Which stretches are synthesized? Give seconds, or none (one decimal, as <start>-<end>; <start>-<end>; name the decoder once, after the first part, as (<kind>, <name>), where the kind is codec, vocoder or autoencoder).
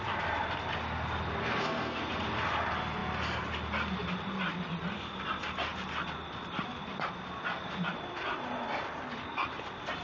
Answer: 1.4-2.1 (codec, SNAC)